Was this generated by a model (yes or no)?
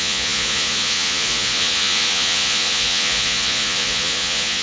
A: yes